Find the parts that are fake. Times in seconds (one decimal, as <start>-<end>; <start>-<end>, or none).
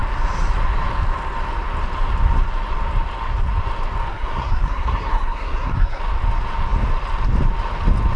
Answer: 4.1-6.0